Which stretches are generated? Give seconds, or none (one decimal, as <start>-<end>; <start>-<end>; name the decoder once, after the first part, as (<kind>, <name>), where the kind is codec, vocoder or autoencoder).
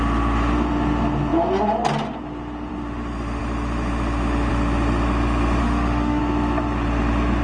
5.6-6.2 (autoencoder, DAC-VAE)